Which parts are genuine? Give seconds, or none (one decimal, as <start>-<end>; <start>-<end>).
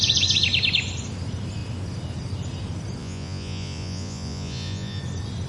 0.0-3.0; 5.0-5.5